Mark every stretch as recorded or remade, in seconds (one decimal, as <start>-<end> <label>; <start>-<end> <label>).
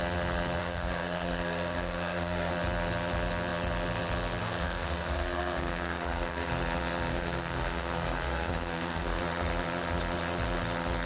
0.0-0.6 recorded; 0.6-2.5 remade; 2.5-4.4 recorded; 4.4-6.5 remade; 6.5-7.1 recorded; 7.1-9.2 remade; 9.2-11.1 recorded